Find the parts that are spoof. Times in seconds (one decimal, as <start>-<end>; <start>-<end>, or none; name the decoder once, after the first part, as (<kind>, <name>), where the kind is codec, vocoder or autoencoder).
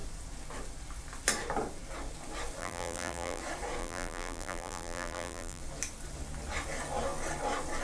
2.6-3.4 (vocoder, BigVGAN v2); 3.8-5.6